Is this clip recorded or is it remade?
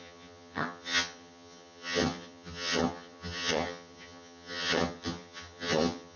remade